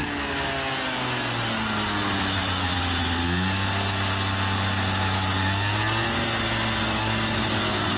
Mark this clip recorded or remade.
recorded